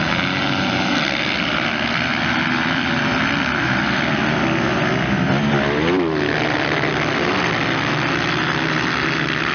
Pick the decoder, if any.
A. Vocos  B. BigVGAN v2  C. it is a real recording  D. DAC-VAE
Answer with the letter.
C